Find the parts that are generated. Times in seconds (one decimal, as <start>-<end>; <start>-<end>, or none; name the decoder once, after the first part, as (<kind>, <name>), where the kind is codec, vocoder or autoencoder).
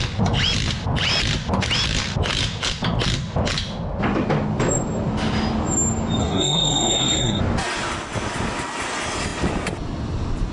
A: 6.2-7.4 (codec, SNAC)